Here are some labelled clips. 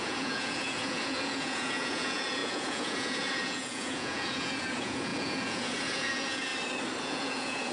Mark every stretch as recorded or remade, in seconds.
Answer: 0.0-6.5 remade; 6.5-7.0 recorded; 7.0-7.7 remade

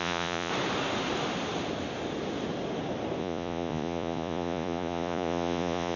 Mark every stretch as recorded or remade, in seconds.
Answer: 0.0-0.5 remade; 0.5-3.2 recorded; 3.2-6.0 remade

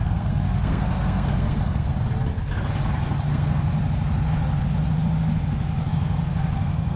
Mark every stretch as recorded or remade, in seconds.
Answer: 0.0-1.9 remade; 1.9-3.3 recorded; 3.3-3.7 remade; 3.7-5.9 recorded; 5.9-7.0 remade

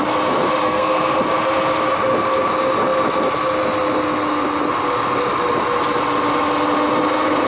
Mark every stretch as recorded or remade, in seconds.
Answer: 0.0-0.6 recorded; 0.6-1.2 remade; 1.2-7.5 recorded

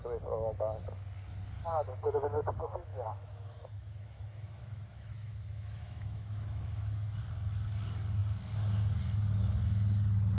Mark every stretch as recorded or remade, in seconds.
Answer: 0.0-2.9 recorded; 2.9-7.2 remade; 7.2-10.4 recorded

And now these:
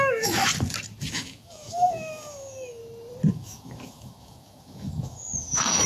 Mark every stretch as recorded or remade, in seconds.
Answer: 0.0-0.5 remade; 0.5-1.1 recorded; 1.1-2.8 remade; 2.8-3.3 recorded; 3.3-5.9 remade

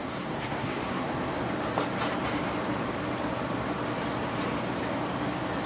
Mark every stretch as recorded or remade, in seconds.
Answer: 0.0-1.4 remade; 1.4-5.7 recorded

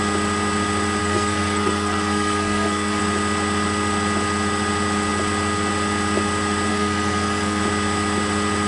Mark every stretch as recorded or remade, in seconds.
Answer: 0.0-1.0 recorded; 1.0-3.0 remade; 3.0-6.7 recorded; 6.7-7.6 remade; 7.6-8.7 recorded